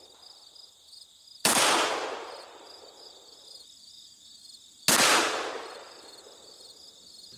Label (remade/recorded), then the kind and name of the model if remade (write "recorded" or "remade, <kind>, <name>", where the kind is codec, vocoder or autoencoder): recorded